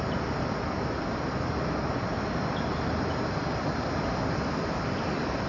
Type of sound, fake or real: real